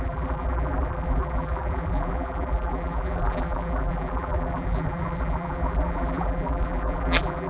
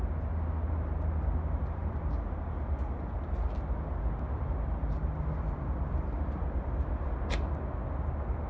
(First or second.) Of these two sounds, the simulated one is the first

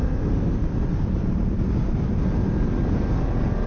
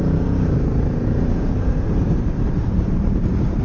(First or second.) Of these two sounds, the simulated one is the second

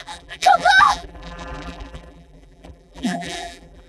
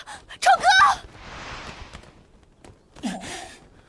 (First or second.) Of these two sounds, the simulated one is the first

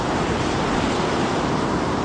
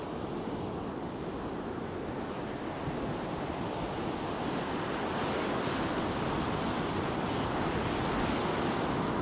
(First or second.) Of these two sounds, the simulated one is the first